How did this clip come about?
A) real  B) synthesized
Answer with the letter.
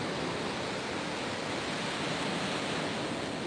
A